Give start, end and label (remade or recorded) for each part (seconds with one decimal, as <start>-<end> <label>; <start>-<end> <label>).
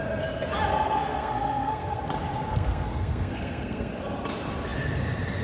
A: 0.0-0.7 recorded; 0.7-2.0 remade; 2.0-2.5 recorded; 2.5-3.9 remade; 3.9-5.4 recorded